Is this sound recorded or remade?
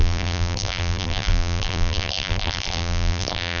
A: remade